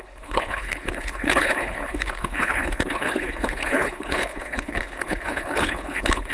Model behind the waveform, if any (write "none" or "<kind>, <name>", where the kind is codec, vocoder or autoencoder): codec, HILCodec